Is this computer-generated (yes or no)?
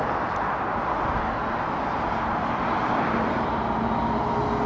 no